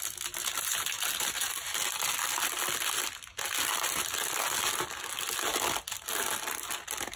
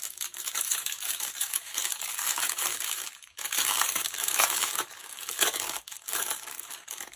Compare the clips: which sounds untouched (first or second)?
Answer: first